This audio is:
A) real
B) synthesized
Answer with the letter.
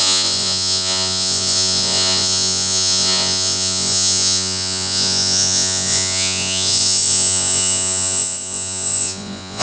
B